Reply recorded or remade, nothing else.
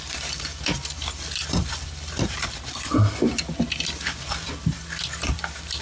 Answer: remade